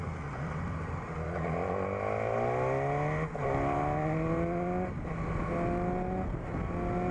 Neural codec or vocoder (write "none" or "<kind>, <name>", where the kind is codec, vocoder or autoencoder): none